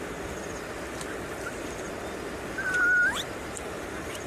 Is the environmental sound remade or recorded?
recorded